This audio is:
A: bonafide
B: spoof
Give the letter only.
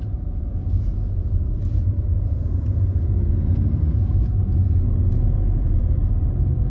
B